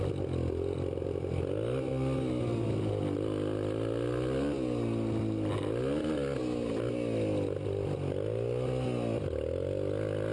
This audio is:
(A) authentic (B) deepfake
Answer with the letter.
A